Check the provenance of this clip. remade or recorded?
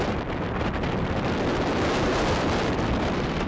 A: recorded